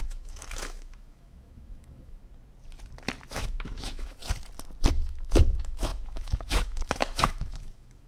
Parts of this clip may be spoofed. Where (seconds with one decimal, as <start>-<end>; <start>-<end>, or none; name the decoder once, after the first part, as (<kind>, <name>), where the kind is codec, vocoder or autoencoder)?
0.0-2.2 (autoencoder, DAC-VAE); 3.3-4.2; 4.9-8.1